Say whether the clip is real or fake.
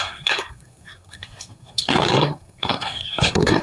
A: fake